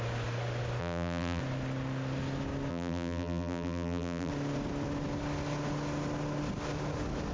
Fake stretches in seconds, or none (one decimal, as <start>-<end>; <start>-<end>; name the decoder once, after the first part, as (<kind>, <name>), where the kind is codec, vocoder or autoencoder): 0.8-1.4 (vocoder, BigVGAN v2); 2.7-4.3